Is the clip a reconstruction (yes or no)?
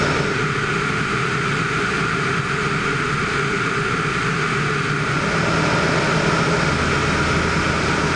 no